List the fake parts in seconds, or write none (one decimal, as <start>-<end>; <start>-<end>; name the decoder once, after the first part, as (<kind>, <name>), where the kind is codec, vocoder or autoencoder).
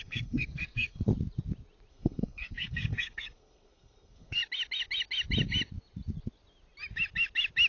0.0-1.1 (codec, SNAC); 1.9-4.4